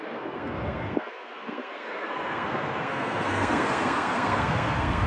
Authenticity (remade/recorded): remade